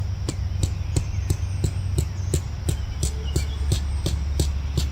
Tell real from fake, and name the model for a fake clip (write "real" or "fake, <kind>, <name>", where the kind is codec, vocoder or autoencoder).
real